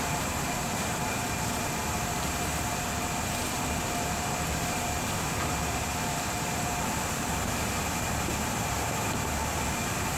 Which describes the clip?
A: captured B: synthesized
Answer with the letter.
B